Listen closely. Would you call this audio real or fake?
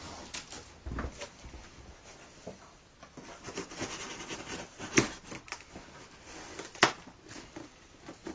real